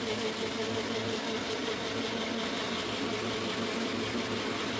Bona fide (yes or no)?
yes